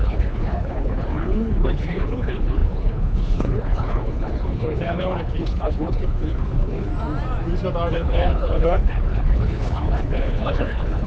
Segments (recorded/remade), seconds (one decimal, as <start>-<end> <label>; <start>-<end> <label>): 0.0-6.9 remade; 6.9-7.9 recorded; 7.9-11.1 remade